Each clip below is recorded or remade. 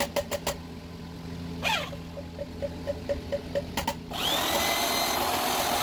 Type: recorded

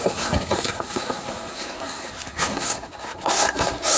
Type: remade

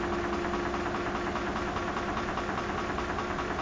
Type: recorded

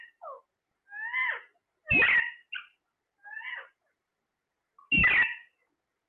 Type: recorded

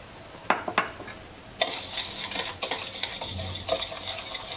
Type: recorded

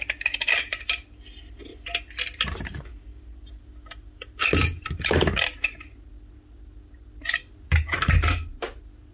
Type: recorded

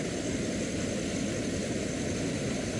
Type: recorded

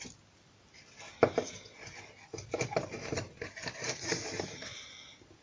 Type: recorded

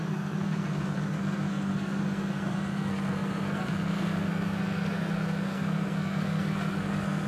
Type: remade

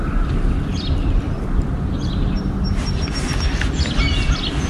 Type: recorded